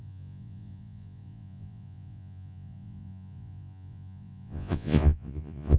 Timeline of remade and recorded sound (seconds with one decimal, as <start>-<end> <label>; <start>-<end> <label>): 0.0-5.8 remade